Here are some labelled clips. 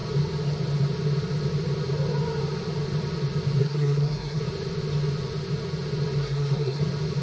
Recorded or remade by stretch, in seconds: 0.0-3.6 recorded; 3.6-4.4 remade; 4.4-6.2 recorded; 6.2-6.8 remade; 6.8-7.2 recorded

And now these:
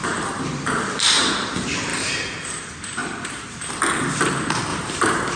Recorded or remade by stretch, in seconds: 0.0-1.3 remade; 1.3-1.9 recorded; 1.9-2.6 remade; 2.6-3.0 recorded; 3.0-3.7 remade; 3.7-4.7 recorded; 4.7-5.4 remade

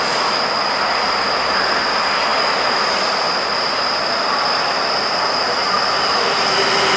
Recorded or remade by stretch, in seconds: 0.0-5.6 recorded; 5.6-7.0 remade

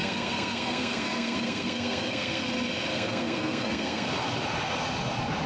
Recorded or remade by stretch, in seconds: 0.0-2.5 remade; 2.5-2.9 recorded; 2.9-4.1 remade; 4.1-5.5 recorded

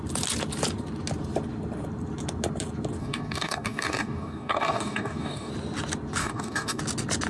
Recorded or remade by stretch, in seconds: 0.0-3.0 recorded; 3.0-5.5 remade; 5.5-6.2 recorded; 6.2-6.8 remade; 6.8-7.3 recorded

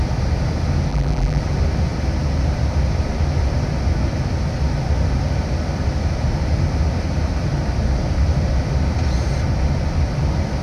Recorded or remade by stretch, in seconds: 0.0-0.9 recorded; 0.9-1.4 remade; 1.4-10.6 recorded

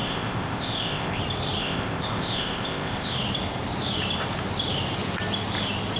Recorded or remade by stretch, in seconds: 0.0-1.2 remade; 1.2-1.6 recorded; 1.6-3.1 remade; 3.1-6.0 recorded